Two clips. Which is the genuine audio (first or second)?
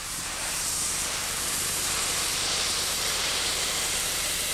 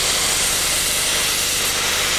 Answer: second